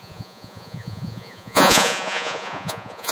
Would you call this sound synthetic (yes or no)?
yes